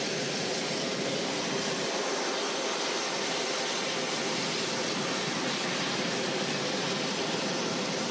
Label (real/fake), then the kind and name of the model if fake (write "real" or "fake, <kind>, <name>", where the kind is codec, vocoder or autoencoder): real